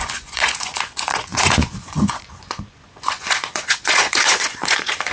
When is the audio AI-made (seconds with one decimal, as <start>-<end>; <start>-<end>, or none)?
0.0-5.1